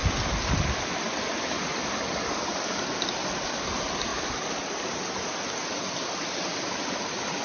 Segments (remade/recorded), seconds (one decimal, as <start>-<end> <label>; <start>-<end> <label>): 0.0-4.1 remade; 4.1-6.7 recorded; 6.7-7.4 remade